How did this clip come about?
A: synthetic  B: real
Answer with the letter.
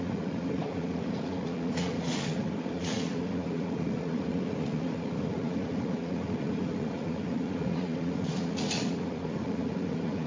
A